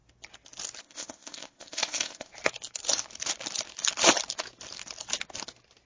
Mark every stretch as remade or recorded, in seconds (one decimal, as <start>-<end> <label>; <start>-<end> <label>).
0.0-0.8 recorded; 0.8-2.3 remade; 2.3-5.9 recorded